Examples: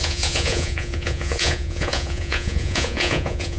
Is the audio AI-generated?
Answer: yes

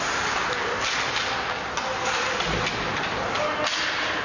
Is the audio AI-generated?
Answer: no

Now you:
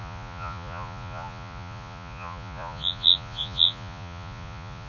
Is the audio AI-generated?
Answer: yes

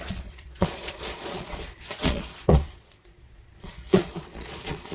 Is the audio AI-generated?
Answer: yes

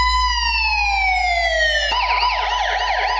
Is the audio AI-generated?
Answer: no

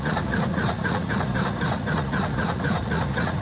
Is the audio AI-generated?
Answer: yes